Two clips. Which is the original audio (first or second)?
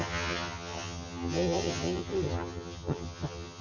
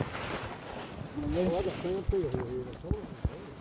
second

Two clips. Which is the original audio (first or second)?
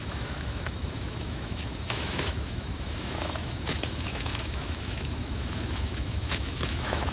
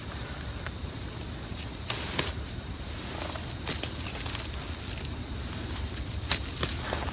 second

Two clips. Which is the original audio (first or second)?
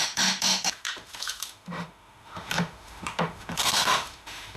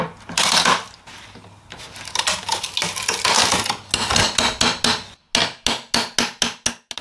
second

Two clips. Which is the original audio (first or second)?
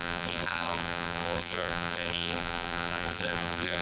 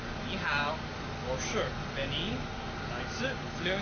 second